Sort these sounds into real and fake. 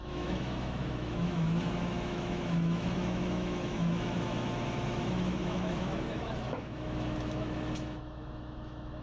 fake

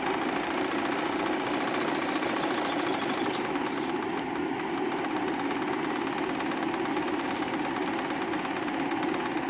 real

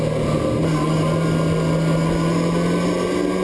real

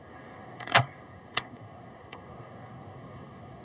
fake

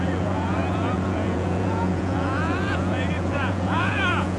fake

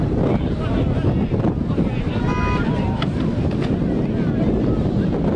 real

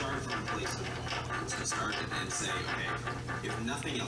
real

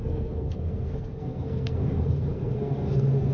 fake